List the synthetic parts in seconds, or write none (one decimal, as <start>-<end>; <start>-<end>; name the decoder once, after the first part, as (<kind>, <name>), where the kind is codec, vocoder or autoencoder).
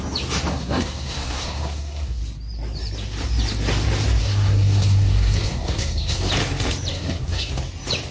0.5-2.2 (codec, SNAC); 4.2-6.3; 6.9-7.5